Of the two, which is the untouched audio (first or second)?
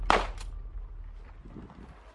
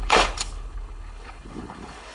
first